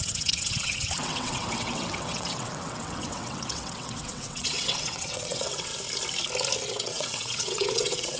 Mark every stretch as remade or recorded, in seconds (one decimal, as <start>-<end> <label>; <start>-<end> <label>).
0.0-5.7 remade; 5.7-6.7 recorded; 6.7-8.2 remade